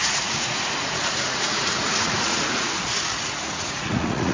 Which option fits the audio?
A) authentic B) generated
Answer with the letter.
B